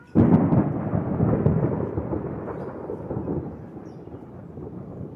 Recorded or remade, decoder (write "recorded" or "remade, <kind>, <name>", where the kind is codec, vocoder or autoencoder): recorded